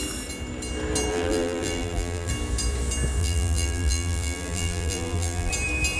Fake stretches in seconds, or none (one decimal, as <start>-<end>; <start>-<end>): 1.1-2.3; 3.2-5.5